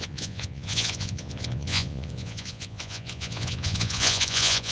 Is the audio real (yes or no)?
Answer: no